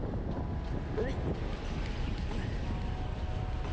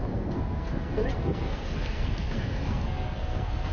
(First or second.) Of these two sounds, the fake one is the second